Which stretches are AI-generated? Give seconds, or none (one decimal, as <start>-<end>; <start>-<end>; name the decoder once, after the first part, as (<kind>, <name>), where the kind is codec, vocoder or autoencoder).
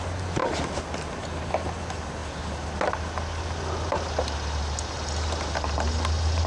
none